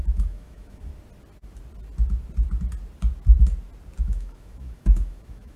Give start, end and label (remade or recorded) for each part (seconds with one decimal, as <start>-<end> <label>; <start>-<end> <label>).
0.0-0.9 remade; 0.9-4.0 recorded; 4.0-5.6 remade